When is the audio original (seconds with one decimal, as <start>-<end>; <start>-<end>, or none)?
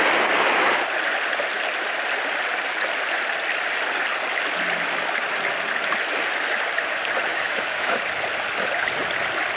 0.0-7.3; 8.0-9.6